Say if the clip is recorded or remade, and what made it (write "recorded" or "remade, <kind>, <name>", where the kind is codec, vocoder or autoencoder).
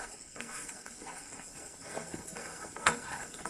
remade, codec, SNAC